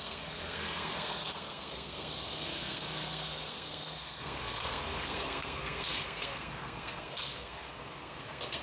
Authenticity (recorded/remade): remade